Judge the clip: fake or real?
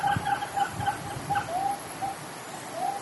real